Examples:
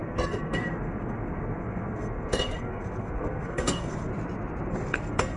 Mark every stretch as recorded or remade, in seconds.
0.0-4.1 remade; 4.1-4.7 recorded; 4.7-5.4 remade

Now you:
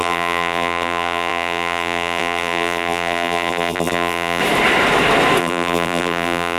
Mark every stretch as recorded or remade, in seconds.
0.0-4.4 remade; 4.4-5.4 recorded; 5.4-6.6 remade

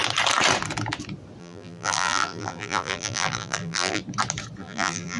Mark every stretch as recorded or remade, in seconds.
0.0-1.4 recorded; 1.4-4.0 remade; 4.0-4.6 recorded; 4.6-5.2 remade

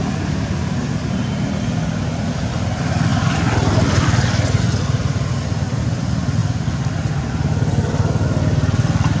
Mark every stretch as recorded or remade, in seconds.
0.0-3.1 recorded; 3.1-4.6 remade; 4.6-9.2 recorded